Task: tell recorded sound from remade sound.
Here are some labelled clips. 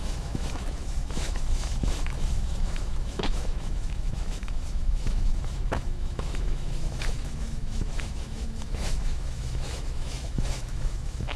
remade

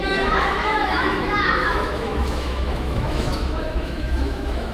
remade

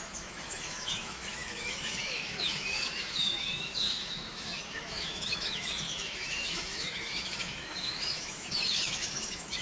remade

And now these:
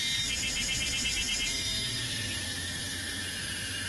remade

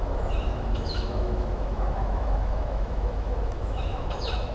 remade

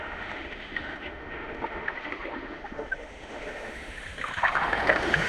remade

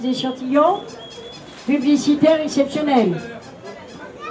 recorded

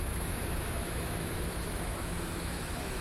remade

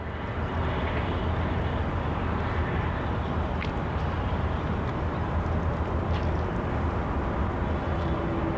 recorded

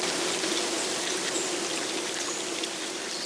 recorded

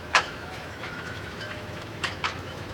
remade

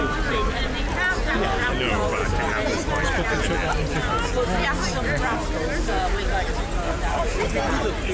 recorded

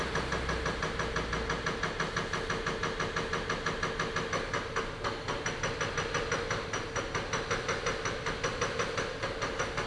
recorded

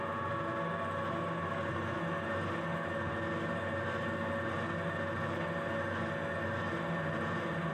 recorded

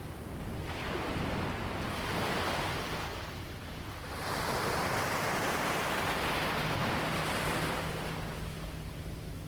recorded